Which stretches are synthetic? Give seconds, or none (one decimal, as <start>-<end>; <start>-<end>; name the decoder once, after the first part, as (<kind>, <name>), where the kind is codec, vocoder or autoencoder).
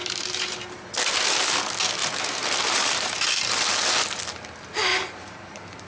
0.0-0.7 (vocoder, BigVGAN v2); 2.0-3.5; 4.9-5.9